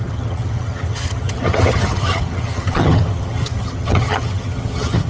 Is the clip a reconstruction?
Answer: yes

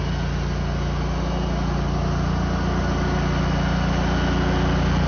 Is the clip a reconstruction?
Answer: no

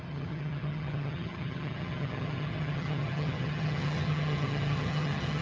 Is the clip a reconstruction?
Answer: yes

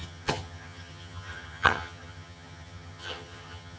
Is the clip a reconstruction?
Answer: yes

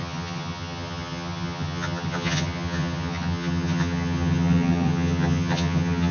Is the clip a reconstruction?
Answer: yes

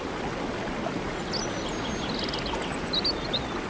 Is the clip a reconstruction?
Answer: no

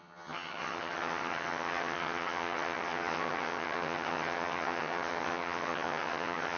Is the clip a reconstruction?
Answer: yes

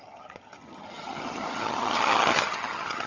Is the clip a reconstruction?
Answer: yes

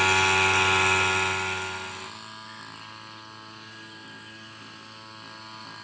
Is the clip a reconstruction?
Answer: no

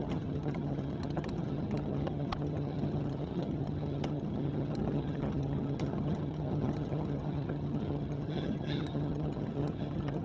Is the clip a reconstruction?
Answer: yes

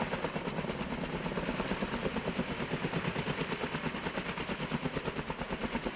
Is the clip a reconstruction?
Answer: no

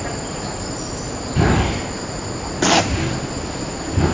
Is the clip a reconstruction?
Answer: no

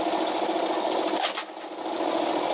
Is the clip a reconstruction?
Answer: no